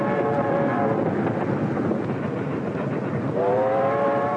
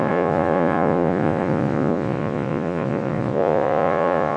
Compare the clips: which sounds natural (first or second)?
first